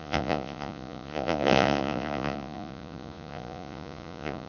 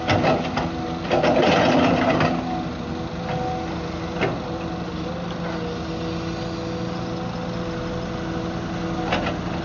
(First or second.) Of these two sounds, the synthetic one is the first